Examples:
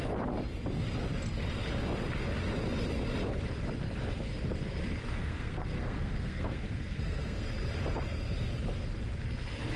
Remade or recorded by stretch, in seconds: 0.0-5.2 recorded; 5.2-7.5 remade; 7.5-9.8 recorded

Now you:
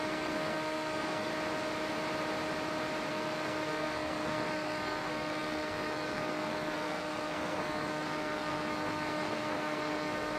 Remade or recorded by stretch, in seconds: 0.0-1.3 remade; 1.3-3.1 recorded; 3.1-10.4 remade

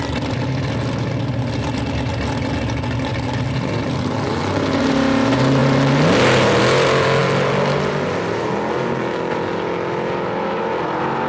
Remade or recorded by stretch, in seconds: 0.0-11.3 recorded